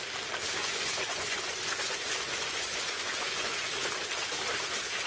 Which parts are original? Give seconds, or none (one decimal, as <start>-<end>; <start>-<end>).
0.0-0.6; 3.7-5.1